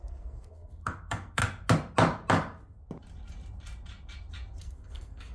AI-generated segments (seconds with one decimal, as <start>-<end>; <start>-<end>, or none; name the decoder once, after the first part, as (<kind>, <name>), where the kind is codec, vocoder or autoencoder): 0.0-1.4 (codec, SNAC); 4.6-5.3